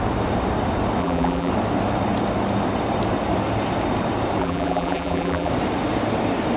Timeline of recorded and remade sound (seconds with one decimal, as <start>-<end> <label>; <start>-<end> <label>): 0.0-1.0 recorded; 1.0-1.5 remade; 1.5-4.4 recorded; 4.4-5.5 remade; 5.5-6.6 recorded